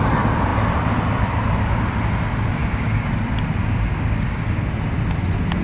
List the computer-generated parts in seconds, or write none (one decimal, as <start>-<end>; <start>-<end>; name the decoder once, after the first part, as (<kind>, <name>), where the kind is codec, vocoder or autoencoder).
2.6-3.1 (codec, DAC); 3.6-4.6